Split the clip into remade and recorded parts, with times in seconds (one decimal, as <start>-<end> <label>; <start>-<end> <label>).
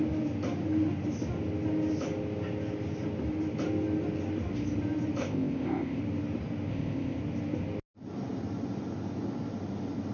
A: 0.0-5.2 recorded; 5.2-6.0 remade; 6.0-6.7 recorded; 6.7-7.2 remade; 7.2-10.1 recorded